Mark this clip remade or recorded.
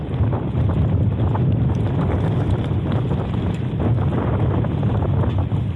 recorded